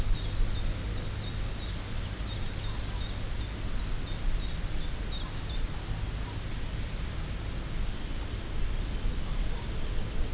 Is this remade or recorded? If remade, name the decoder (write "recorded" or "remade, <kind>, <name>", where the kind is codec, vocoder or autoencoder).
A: recorded